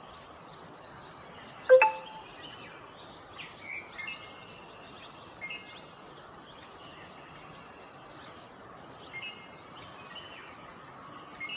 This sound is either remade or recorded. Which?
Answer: recorded